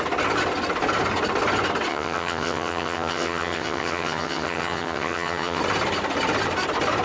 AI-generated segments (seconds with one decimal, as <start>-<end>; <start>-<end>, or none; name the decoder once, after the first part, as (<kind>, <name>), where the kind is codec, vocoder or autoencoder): 1.9-5.6 (vocoder, HiFi-GAN)